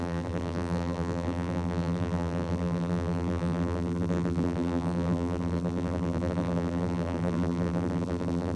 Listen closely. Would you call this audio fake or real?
fake